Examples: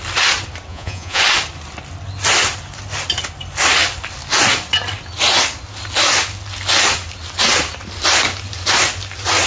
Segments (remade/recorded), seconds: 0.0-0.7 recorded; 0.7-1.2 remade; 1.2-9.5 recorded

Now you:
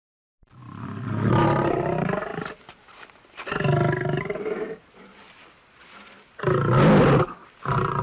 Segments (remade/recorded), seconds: 0.0-0.6 recorded; 0.6-1.4 remade; 1.4-8.0 recorded

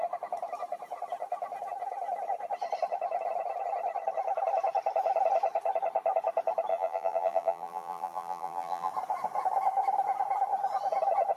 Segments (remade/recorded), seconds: 0.0-6.7 recorded; 6.7-8.9 remade; 8.9-11.4 recorded

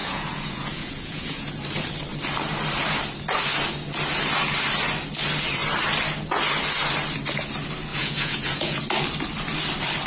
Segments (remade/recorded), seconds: 0.0-1.6 remade; 1.6-7.9 recorded; 7.9-8.8 remade; 8.8-10.1 recorded

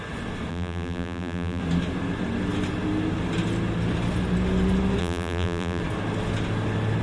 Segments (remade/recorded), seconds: 0.0-0.5 recorded; 0.5-1.6 remade; 1.6-5.0 recorded; 5.0-5.8 remade; 5.8-7.0 recorded

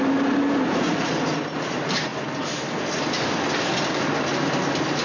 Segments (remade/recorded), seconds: 0.0-5.0 recorded